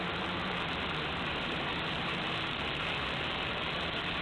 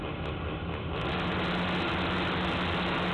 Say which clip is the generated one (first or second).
first